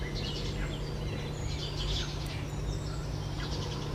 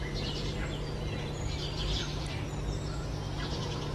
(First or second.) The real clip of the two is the first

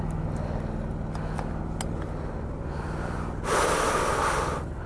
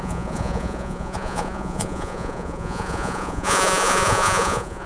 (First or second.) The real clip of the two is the first